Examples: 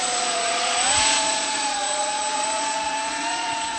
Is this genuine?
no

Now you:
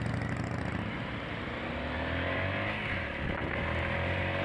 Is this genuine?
yes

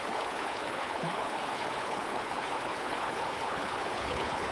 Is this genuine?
no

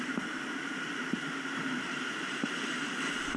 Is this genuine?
yes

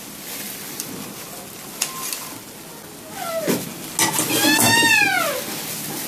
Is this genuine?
yes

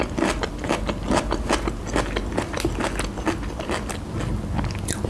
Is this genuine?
yes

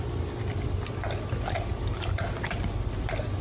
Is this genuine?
yes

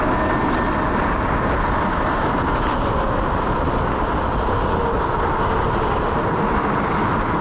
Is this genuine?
yes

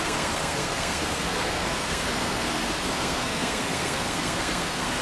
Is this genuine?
no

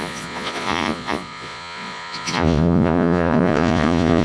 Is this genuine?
no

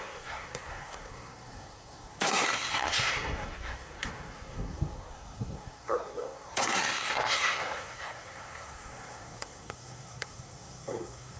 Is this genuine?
no